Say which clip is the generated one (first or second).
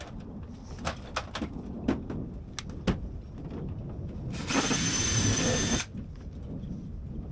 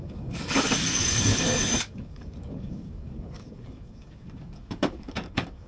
second